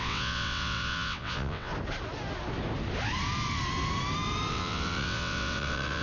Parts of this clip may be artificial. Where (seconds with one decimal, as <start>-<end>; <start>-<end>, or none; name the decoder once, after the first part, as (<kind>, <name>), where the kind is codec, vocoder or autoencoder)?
0.0-1.7 (vocoder, WaveNeXt); 4.5-6.0